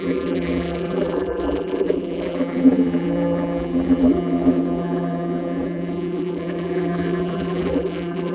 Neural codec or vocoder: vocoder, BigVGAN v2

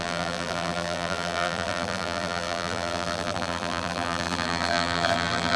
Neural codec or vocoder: vocoder, BigVGAN v2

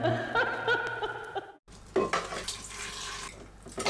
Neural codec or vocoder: none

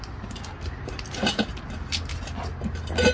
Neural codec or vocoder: none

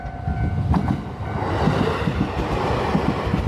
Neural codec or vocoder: none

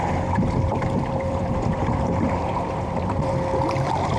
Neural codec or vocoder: vocoder, BigVGAN v2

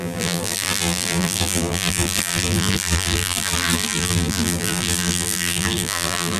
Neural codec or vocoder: vocoder, BigVGAN v2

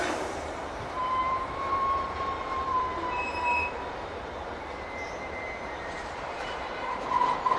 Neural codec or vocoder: vocoder, BigVGAN v2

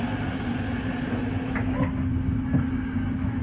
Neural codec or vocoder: none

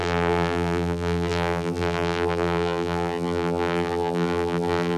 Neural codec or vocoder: vocoder, BigVGAN v2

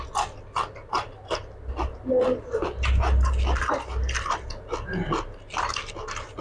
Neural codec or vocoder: none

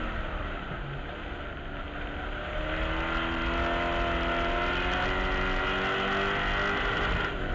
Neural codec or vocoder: none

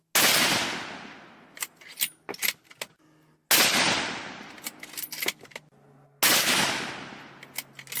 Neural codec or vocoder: none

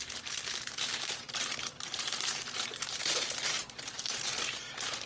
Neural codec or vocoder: vocoder, BigVGAN v2